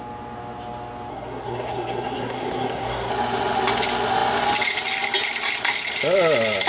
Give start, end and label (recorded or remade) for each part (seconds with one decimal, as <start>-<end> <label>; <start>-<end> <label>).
0.0-1.1 recorded; 1.1-3.1 remade; 3.1-6.7 recorded